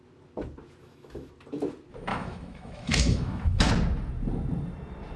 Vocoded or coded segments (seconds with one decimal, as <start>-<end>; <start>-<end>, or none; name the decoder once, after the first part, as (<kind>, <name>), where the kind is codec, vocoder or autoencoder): 0.8-1.3 (autoencoder, DAC-VAE); 2.1-3.7